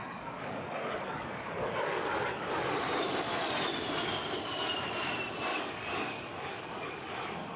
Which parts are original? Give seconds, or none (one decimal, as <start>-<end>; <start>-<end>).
2.6-5.5